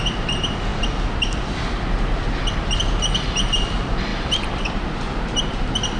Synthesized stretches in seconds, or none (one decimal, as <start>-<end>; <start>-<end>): 0.7-1.8; 4.1-4.6